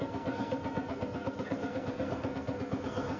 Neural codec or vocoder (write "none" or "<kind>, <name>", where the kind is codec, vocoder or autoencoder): codec, SNAC